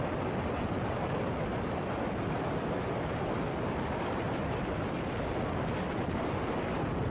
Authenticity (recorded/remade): recorded